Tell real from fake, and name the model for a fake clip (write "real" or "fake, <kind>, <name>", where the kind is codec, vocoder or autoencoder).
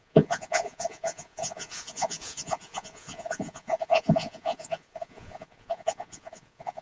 fake, vocoder, Vocos